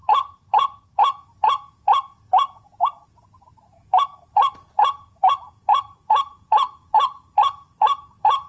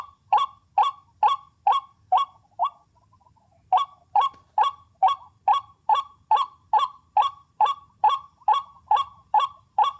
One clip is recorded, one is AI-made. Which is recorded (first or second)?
second